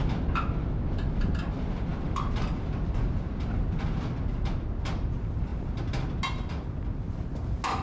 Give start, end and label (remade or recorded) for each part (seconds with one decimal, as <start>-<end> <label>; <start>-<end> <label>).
0.0-7.8 recorded